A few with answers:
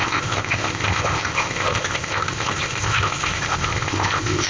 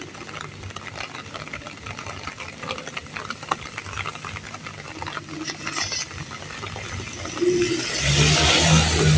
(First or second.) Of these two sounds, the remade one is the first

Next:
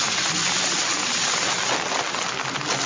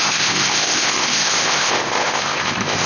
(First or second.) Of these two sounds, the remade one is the second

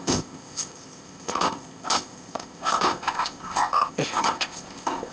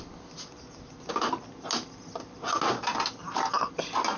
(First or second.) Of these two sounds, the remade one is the first